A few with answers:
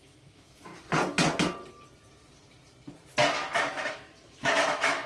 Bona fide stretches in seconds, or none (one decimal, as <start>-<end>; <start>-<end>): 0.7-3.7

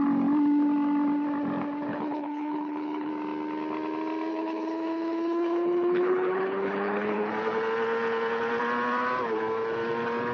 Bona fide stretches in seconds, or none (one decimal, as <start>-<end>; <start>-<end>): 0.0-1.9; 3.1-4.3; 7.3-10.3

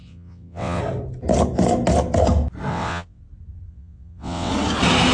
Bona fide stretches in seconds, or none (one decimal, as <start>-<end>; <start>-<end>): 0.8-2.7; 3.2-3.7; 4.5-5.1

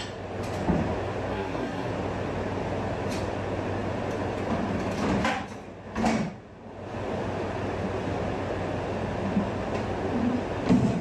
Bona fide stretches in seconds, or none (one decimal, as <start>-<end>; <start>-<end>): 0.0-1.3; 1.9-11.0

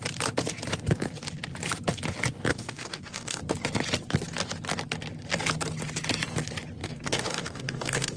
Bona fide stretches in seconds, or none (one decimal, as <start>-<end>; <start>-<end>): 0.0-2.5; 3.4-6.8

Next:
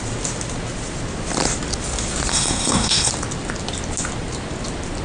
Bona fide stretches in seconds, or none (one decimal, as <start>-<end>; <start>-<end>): 0.0-2.3; 3.1-5.0

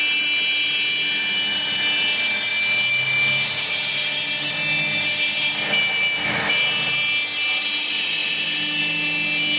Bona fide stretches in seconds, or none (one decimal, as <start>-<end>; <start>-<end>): 0.0-9.6